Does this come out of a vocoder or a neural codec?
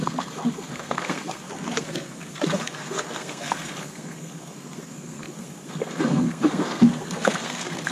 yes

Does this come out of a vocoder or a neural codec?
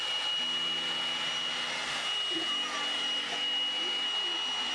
no